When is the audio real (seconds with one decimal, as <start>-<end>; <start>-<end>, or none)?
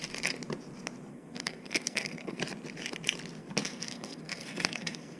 0.0-1.1; 2.4-3.4